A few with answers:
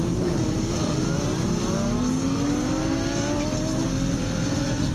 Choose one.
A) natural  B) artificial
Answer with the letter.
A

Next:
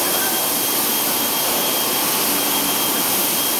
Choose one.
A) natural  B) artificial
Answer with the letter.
B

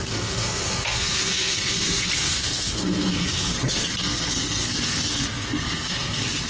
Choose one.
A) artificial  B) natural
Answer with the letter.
A